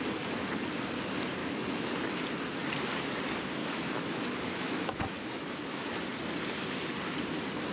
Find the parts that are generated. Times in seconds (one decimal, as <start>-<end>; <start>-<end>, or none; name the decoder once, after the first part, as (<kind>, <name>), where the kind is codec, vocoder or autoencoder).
1.4-1.9 (autoencoder, DAC-VAE); 3.6-6.0